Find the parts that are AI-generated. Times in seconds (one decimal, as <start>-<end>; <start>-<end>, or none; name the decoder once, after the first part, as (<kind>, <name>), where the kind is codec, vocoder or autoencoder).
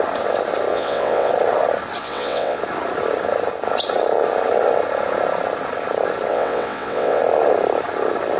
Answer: 0.7-1.3 (vocoder, WaveNeXt); 2.0-2.6; 6.3-7.2